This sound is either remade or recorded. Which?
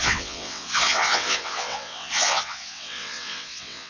remade